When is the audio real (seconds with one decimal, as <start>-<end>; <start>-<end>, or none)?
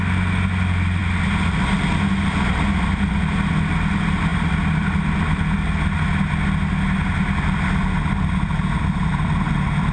0.0-9.9